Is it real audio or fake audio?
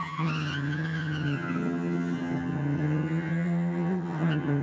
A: fake